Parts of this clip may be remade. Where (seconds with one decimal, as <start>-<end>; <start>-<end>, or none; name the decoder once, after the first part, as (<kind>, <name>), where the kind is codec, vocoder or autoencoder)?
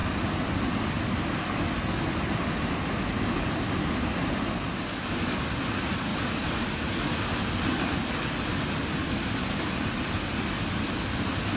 none